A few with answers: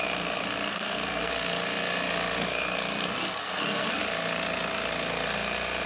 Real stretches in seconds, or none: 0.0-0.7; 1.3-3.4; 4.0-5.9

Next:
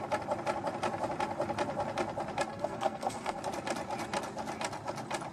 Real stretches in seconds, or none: 0.0-2.5; 3.4-5.3

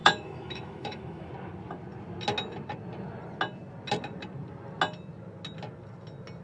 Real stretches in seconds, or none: 1.3-6.4

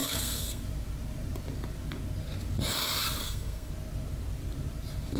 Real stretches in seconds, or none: 0.6-3.2; 3.7-5.2